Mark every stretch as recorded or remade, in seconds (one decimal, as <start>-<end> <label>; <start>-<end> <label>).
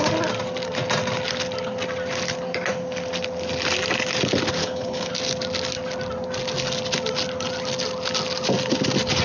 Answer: 0.0-4.6 recorded; 4.6-5.1 remade; 5.1-9.2 recorded